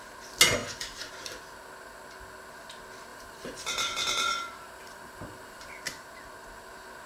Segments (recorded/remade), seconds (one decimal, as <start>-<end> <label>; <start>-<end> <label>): 0.0-0.6 recorded; 0.6-1.1 remade; 1.1-3.1 recorded; 3.1-5.7 remade; 5.7-7.1 recorded